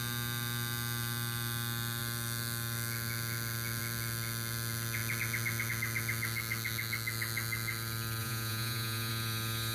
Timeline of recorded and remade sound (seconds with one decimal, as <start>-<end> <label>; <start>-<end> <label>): 0.0-8.2 recorded; 8.2-9.1 remade; 9.1-9.7 recorded